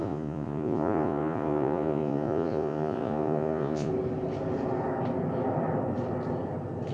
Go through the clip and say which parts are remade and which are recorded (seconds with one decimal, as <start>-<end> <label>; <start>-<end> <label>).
0.0-3.9 remade; 3.9-6.9 recorded